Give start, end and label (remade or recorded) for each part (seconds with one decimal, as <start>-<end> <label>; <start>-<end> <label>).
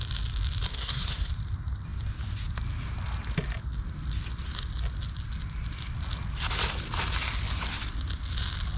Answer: 0.0-0.7 recorded; 0.7-1.3 remade; 1.3-8.8 recorded